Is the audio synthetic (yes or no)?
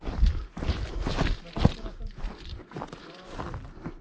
yes